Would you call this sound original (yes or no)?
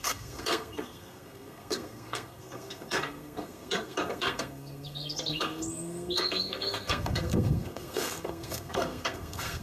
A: no